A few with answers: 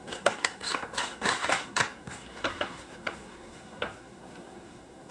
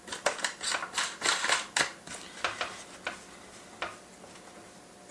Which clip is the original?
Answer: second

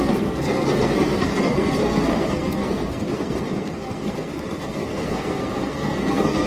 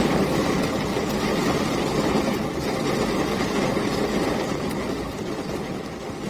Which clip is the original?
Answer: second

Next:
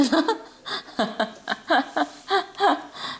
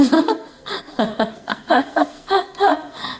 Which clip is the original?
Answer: first